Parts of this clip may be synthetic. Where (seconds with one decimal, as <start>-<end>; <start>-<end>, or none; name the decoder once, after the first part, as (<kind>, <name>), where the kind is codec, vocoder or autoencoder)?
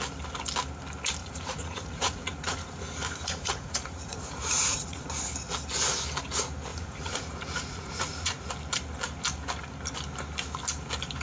1.2-5.1 (vocoder, Vocos); 6.7-8.5